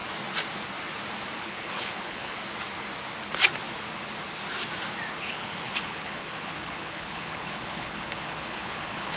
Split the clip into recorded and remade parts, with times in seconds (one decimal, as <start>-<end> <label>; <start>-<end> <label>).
0.0-1.4 recorded; 1.4-2.4 remade; 2.4-5.2 recorded; 5.2-9.2 remade